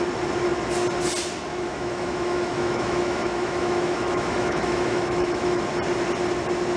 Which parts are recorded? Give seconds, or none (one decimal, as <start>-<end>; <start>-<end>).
0.0-1.5; 5.6-6.8